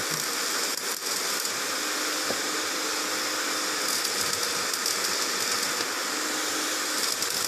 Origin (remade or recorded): recorded